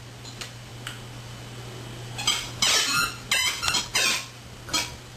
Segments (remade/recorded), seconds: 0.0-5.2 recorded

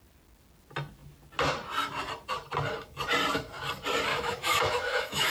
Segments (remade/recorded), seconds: 0.0-4.1 recorded; 4.1-5.3 remade

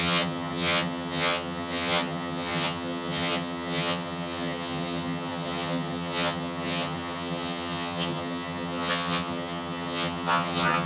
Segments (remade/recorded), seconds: 0.0-10.9 remade

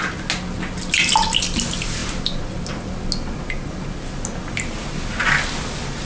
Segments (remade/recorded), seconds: 0.0-6.1 recorded

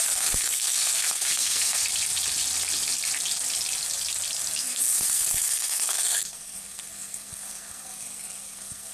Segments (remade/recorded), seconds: 0.0-1.8 remade; 1.8-4.6 recorded; 4.6-8.9 remade

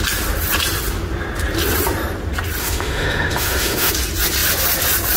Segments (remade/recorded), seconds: 0.0-2.6 recorded; 2.6-3.9 remade; 3.9-5.2 recorded

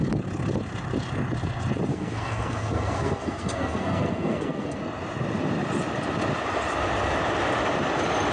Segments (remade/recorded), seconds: 0.0-1.9 recorded; 1.9-4.8 remade; 4.8-8.3 recorded